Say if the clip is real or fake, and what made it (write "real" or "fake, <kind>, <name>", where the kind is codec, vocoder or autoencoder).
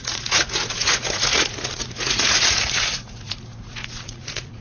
fake, vocoder, Vocos